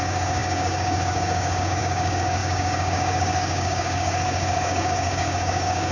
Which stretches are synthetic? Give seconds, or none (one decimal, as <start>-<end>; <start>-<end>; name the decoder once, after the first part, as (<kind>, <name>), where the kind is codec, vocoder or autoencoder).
0.0-5.9 (codec, DAC)